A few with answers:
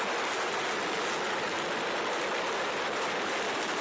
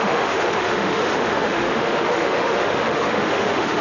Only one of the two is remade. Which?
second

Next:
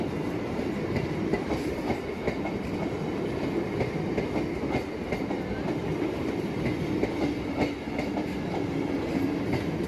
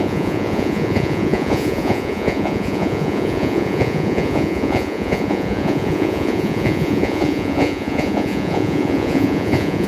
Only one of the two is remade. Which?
second